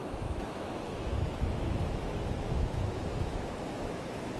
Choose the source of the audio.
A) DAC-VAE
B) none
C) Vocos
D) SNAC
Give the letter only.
A